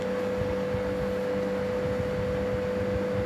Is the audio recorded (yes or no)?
yes